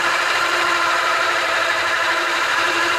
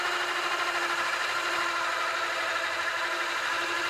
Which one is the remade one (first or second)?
first